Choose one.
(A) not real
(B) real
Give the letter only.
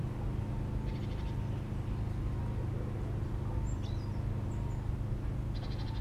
B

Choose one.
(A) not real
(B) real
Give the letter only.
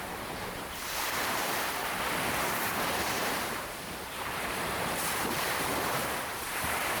A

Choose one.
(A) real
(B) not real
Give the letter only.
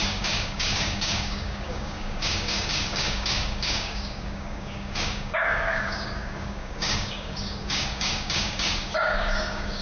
B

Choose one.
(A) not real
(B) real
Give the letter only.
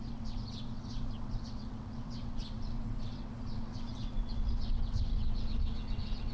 A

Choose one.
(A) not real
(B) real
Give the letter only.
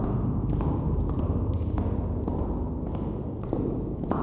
B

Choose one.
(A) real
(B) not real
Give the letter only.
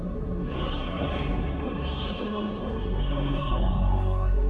B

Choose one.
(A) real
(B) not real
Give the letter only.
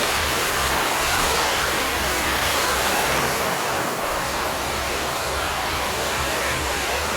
B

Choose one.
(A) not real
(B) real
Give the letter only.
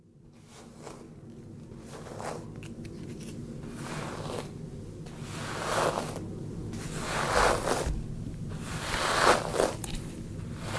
B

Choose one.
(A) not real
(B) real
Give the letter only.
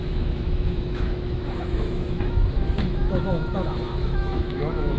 A